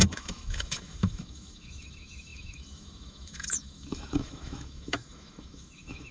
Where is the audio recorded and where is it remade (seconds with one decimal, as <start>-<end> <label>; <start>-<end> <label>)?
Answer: 0.0-6.1 remade